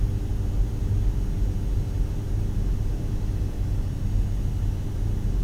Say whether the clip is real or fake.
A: real